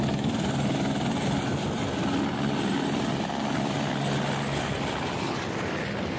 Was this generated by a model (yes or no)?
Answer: no